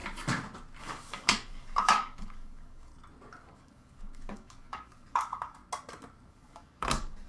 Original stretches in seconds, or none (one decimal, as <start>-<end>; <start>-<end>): 0.0-0.8; 2.9-3.5; 5.6-6.3